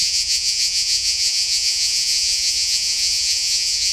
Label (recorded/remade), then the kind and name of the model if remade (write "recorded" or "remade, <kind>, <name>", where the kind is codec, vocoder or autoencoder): remade, vocoder, Vocos